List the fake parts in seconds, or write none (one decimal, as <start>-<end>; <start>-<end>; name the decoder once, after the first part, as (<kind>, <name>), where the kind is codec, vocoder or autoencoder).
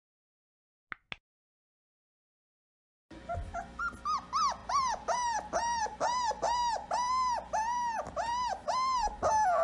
4.6-6.4 (vocoder, BigVGAN v2)